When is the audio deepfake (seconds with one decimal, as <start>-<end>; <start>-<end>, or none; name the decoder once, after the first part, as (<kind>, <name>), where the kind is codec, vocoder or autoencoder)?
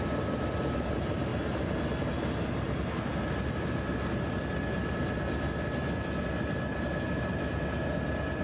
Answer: none